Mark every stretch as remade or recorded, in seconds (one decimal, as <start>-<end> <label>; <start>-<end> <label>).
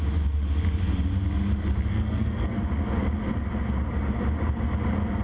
0.0-1.9 recorded; 1.9-2.6 remade; 2.6-5.2 recorded